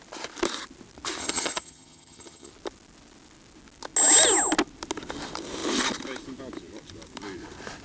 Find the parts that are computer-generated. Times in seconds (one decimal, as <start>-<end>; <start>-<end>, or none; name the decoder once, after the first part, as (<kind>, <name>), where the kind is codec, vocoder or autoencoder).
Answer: 1.2-2.5 (vocoder, HiFi-GAN)